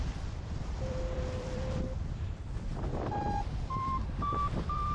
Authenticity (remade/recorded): remade